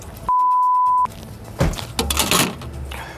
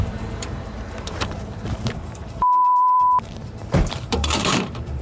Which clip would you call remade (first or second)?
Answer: second